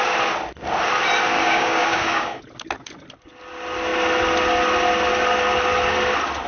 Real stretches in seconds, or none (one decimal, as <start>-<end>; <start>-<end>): 0.0-1.4; 2.4-6.5